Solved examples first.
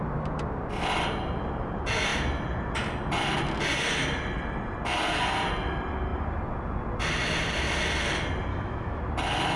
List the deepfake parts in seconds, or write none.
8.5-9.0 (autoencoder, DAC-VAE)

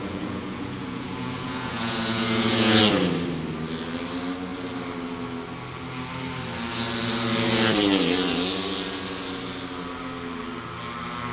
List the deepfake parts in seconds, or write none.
0.0-2.8 (vocoder, Vocos)

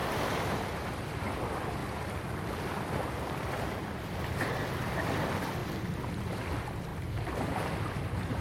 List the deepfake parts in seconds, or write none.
0.0-0.9 (vocoder, BigVGAN v2); 1.8-3.8; 6.9-8.4

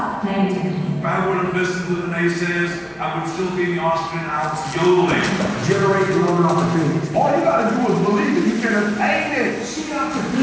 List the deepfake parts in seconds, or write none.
5.6-6.3 (vocoder, Vocos)

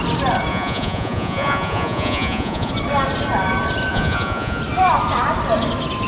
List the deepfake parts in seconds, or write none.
0.5-2.7 (vocoder, Vocos); 3.9-4.6

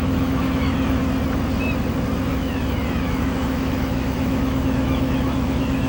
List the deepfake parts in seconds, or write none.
0.0-1.0 (autoencoder, DAC-VAE); 2.3-5.9

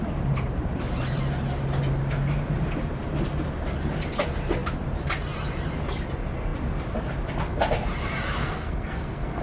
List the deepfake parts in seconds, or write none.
8.4-9.4 (codec, SNAC)